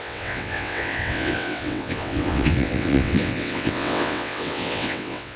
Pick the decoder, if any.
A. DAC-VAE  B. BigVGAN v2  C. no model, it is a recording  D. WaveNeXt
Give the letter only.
D